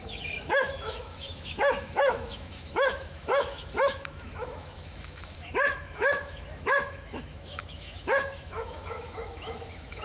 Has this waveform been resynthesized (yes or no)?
yes